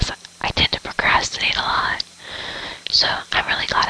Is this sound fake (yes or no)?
no